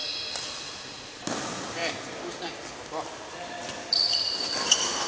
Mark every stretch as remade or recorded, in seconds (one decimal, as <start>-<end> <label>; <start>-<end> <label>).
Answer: 0.0-5.1 recorded